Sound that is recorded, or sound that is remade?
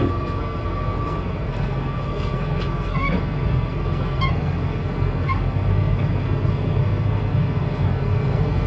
remade